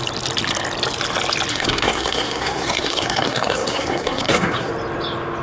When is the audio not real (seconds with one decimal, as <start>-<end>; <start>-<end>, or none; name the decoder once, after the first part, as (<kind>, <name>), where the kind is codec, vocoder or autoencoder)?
1.5-4.7 (codec, SNAC)